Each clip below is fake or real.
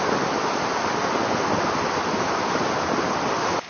real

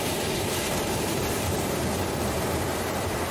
fake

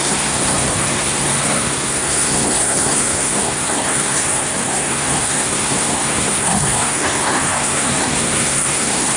fake